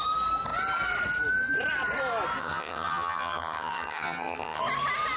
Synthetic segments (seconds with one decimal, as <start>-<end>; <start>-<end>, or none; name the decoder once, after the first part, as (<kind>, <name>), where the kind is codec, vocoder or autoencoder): 2.4-4.6 (vocoder, HiFi-GAN)